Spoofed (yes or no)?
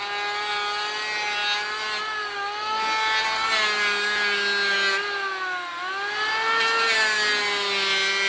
no